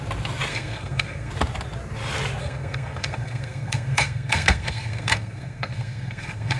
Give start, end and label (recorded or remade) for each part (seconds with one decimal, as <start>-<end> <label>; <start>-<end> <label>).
0.0-0.5 recorded; 0.5-1.3 remade; 1.3-2.4 recorded; 2.4-6.6 remade